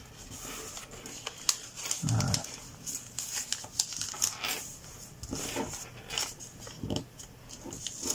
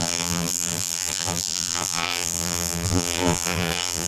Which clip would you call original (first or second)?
first